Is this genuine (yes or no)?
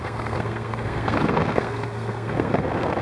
no